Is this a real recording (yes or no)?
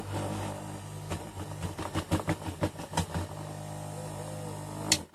yes